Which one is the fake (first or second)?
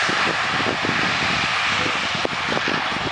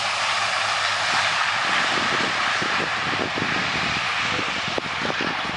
second